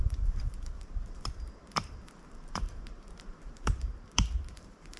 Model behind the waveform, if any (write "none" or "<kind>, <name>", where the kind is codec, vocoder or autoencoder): vocoder, BigVGAN v2